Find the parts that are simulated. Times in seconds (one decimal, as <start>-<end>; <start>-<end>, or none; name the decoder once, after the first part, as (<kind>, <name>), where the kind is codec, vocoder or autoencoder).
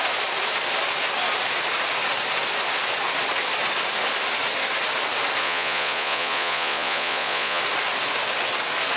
5.4-7.6 (vocoder, Vocos)